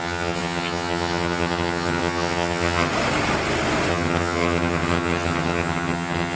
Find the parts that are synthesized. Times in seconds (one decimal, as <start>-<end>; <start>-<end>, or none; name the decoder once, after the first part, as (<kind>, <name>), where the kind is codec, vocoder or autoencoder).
0.0-2.9 (vocoder, HiFi-GAN); 3.9-6.4